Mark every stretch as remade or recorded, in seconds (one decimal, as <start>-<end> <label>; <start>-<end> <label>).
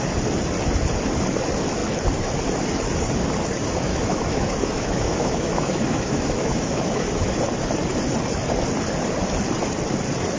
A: 0.0-3.9 recorded; 3.9-7.4 remade; 7.4-10.4 recorded